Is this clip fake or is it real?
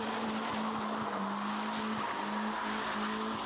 real